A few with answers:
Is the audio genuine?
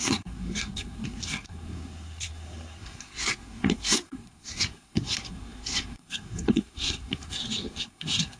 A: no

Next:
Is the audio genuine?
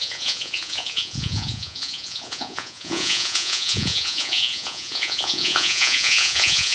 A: no